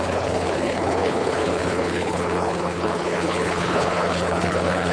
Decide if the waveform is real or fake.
fake